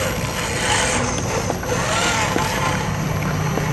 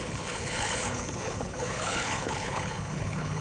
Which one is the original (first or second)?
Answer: first